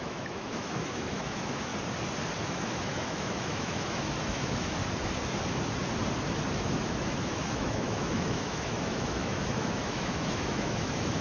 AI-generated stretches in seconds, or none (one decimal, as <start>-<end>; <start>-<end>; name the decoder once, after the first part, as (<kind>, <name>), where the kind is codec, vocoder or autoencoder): 0.0-1.7 (autoencoder, DAC-VAE); 2.4-4.8; 6.6-11.2